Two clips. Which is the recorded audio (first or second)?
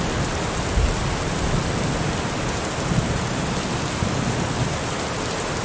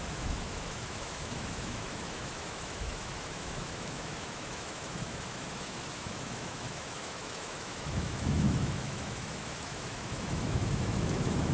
first